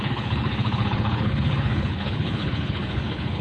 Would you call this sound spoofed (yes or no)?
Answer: yes